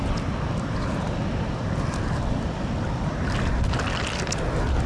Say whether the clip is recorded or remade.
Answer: recorded